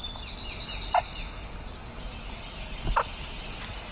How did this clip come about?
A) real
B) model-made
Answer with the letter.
A